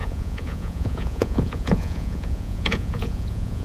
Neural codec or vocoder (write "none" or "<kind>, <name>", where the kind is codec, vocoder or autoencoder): vocoder, Vocos